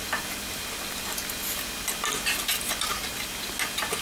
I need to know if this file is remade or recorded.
recorded